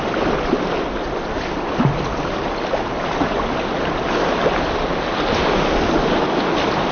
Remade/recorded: recorded